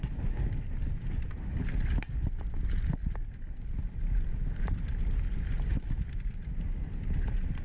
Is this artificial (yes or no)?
no